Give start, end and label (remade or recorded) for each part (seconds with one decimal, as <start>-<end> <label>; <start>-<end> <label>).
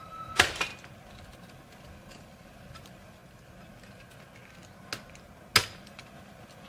0.0-0.7 remade; 0.7-1.5 recorded; 1.5-3.2 remade; 3.2-5.7 recorded; 5.7-6.7 remade